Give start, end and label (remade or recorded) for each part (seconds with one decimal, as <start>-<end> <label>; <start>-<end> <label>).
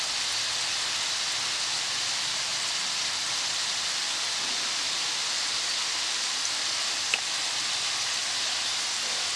0.0-9.4 recorded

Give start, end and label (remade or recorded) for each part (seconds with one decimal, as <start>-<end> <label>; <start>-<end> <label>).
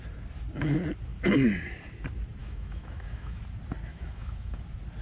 0.0-2.4 recorded; 2.4-3.4 remade; 3.4-3.9 recorded; 3.9-4.6 remade; 4.6-5.0 recorded